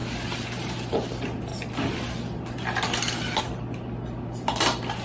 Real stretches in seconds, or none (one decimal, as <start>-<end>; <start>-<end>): 0.0-5.0